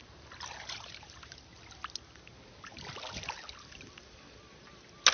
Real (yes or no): yes